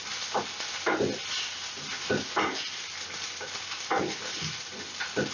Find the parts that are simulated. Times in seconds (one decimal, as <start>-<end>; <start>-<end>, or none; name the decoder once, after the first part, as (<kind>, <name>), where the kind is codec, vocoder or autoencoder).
none